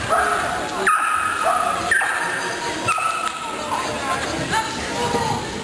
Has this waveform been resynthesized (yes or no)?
no